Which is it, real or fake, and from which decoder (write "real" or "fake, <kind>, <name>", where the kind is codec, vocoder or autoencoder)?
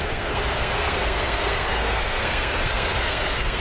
fake, codec, SNAC